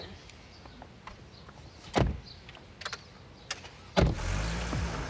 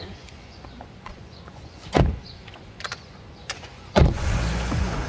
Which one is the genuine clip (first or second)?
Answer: first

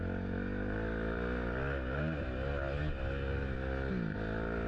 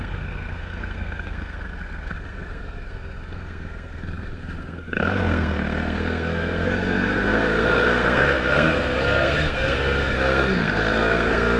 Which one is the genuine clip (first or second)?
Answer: first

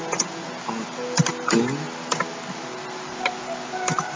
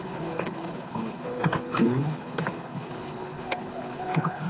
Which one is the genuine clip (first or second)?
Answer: first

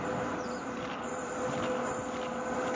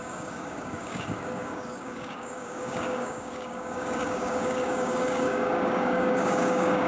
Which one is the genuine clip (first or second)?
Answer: first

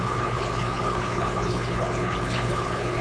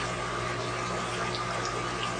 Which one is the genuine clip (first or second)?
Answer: second